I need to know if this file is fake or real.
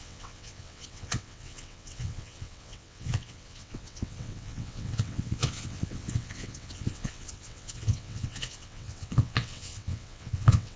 fake